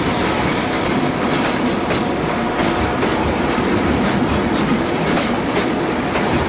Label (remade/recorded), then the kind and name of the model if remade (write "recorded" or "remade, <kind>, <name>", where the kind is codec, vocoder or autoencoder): recorded